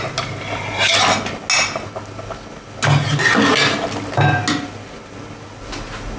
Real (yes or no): yes